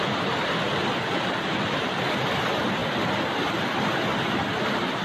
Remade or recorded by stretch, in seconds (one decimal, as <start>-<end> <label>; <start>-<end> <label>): 0.0-2.8 remade; 2.8-3.5 recorded; 3.5-5.0 remade